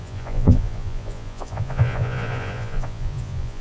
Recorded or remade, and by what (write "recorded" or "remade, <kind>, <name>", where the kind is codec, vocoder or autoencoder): remade, vocoder, Vocos